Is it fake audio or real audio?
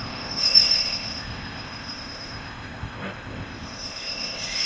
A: fake